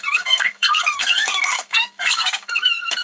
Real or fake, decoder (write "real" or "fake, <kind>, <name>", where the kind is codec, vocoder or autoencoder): fake, codec, SNAC